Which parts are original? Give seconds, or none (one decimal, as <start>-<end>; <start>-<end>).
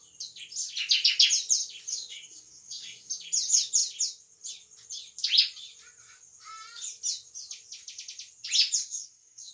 0.0-1.9; 3.1-8.8